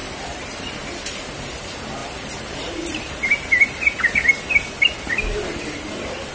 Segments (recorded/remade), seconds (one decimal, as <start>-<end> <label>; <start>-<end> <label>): 0.0-0.6 remade; 0.6-2.0 recorded; 2.0-2.7 remade; 2.7-6.3 recorded